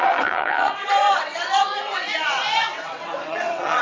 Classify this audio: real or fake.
fake